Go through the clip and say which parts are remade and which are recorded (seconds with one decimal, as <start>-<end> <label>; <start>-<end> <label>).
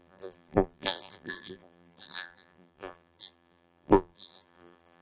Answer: 0.0-5.0 remade